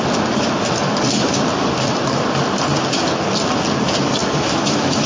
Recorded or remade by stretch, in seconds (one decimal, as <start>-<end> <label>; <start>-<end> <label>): 0.0-4.2 recorded; 4.2-5.1 remade